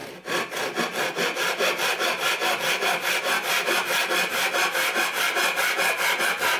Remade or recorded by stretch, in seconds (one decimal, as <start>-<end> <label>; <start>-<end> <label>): 0.0-6.6 recorded